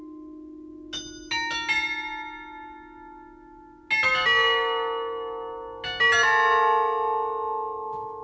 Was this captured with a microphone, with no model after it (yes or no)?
yes